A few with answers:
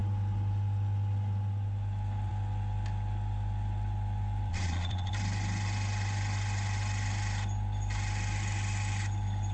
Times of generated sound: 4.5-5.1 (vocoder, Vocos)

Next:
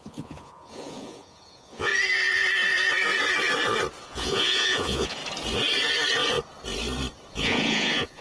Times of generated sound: 0.0-1.9 (vocoder, Vocos); 4.0-5.2; 7.3-8.2